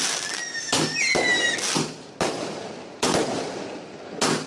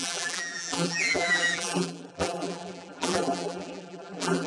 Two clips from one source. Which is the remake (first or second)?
second